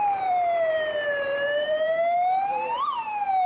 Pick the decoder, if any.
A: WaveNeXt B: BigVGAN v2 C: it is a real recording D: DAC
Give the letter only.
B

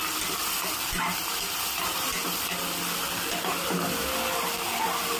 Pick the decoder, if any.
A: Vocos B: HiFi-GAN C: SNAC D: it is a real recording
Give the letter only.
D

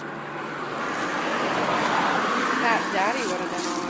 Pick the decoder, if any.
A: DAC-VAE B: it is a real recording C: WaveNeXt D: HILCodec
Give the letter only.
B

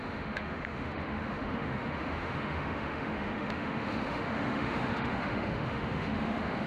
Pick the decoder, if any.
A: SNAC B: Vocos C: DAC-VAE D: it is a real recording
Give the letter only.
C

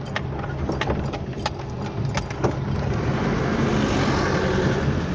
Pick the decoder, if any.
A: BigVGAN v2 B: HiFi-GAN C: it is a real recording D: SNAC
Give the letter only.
C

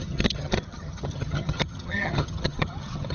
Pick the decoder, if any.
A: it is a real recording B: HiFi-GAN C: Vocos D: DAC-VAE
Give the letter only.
B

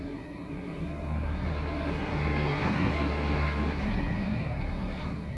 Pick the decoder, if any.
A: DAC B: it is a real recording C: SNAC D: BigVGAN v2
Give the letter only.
C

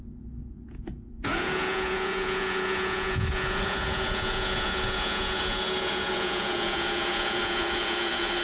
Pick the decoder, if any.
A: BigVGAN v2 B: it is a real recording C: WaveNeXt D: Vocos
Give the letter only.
D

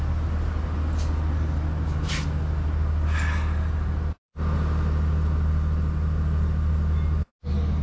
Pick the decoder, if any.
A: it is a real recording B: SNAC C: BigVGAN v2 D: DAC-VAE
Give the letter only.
A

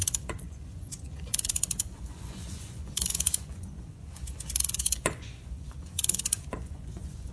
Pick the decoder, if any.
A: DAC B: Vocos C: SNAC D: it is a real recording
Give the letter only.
B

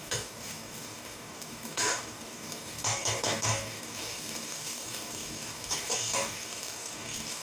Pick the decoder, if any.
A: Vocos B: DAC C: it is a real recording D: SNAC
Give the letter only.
B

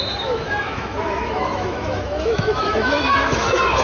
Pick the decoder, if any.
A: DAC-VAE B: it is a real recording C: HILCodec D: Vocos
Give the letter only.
A